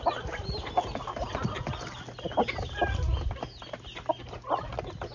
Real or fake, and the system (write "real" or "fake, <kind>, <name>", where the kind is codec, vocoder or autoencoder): real